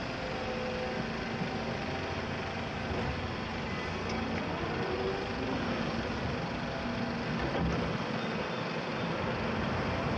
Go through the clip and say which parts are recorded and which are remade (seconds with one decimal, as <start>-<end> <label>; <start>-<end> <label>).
0.0-10.2 recorded